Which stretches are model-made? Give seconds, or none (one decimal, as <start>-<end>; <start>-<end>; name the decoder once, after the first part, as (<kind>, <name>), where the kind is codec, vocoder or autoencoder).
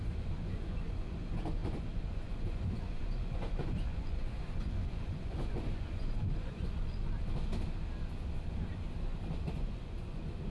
0.0-7.1 (vocoder, Vocos); 9.5-10.5